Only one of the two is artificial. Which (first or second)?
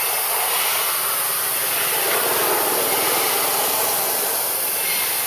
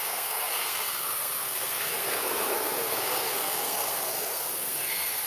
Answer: second